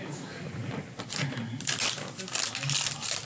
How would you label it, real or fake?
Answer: real